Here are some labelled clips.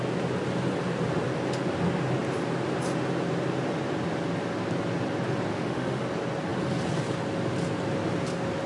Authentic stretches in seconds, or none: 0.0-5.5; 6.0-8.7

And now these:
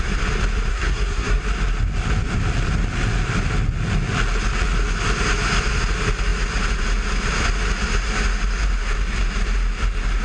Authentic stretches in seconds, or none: 0.0-0.7; 1.4-10.2